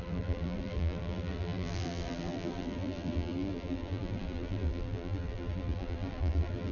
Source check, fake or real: fake